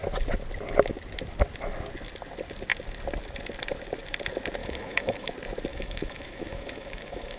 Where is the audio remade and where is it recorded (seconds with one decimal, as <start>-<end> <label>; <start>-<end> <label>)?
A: 0.0-4.6 recorded; 4.6-5.3 remade; 5.3-5.7 recorded; 5.7-7.4 remade